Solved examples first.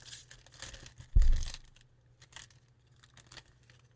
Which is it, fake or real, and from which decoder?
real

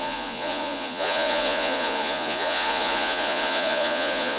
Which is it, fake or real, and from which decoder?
fake, vocoder, Vocos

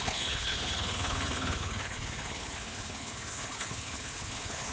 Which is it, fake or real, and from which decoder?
fake, codec, HILCodec